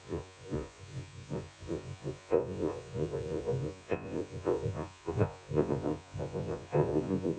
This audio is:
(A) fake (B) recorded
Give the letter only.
A